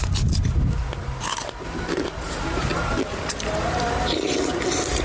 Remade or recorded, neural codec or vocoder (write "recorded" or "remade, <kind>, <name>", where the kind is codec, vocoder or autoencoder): recorded